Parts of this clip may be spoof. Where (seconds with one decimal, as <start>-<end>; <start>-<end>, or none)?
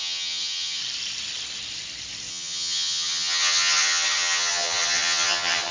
0.0-0.8; 2.3-5.7